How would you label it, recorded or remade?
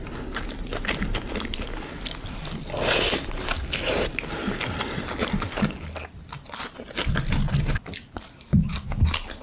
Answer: recorded